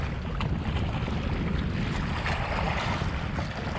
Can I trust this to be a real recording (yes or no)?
yes